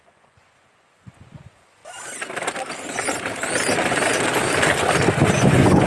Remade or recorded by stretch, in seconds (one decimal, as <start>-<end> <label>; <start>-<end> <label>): 0.0-1.8 remade; 1.8-5.3 recorded; 5.3-5.9 remade

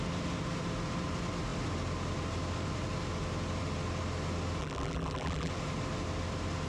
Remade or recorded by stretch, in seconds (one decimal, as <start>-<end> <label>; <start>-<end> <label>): 0.0-4.6 recorded; 4.6-5.5 remade; 5.5-6.7 recorded

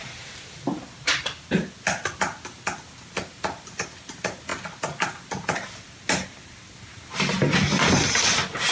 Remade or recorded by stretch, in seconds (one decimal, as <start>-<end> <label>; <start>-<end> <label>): 0.0-8.7 recorded

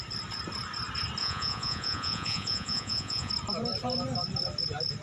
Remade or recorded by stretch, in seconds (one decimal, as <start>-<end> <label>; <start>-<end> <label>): 0.0-1.2 recorded; 1.2-3.3 remade; 3.3-5.0 recorded

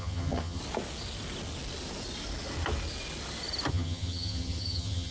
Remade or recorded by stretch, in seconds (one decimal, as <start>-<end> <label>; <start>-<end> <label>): 0.0-0.6 remade; 0.6-3.7 recorded; 3.7-5.1 remade

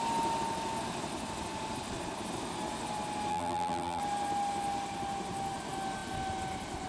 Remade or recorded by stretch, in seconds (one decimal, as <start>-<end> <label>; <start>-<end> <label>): 0.0-3.3 recorded; 3.3-4.0 remade; 4.0-6.9 recorded

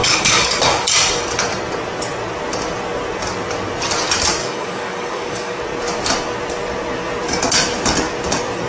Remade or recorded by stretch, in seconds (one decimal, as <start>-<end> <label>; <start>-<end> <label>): 0.0-0.5 remade; 0.5-4.4 recorded; 4.4-5.6 remade; 5.6-8.7 recorded

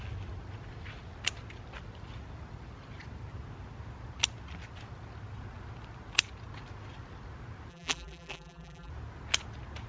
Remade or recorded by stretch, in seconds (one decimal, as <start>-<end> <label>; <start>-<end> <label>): 0.0-7.7 recorded; 7.7-8.9 remade; 8.9-9.9 recorded